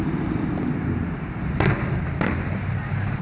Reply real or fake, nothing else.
fake